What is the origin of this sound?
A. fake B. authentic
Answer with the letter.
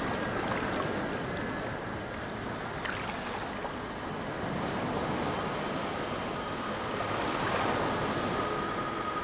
B